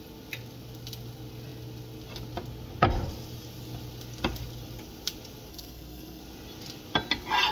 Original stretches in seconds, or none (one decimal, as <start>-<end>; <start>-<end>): 0.0-5.5; 6.2-7.5